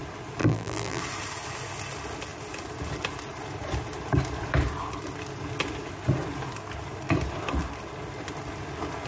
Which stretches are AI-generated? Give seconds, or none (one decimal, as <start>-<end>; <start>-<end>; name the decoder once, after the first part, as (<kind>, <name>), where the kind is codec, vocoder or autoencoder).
0.4-1.0 (vocoder, BigVGAN v2)